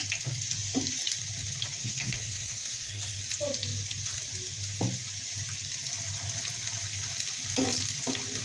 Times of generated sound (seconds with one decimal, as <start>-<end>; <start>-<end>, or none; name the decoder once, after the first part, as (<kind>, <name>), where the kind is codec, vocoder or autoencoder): 1.8-3.2 (codec, SNAC)

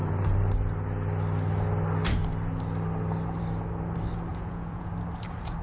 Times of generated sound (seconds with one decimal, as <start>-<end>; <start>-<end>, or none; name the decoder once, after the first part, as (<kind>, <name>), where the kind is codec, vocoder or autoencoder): 4.3-4.9 (vocoder, Vocos)